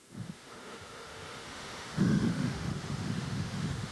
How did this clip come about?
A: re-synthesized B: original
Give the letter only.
A